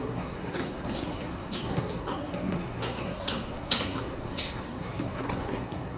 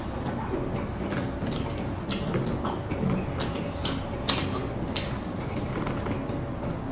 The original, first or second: second